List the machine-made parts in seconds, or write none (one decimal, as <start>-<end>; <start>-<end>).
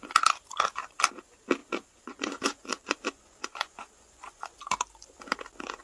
1.6-4.6